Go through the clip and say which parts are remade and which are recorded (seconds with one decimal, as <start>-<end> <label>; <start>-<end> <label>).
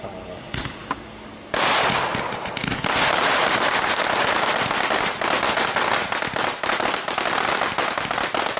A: 0.0-8.6 recorded